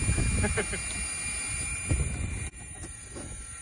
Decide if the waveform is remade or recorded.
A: recorded